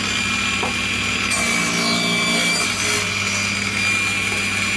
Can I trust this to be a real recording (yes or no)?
yes